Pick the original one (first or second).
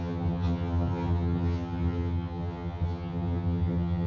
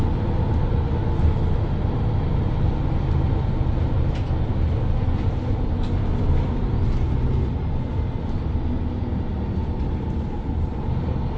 second